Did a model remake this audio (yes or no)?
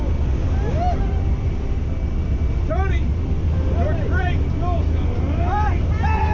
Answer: no